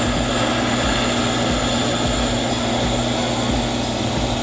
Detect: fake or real real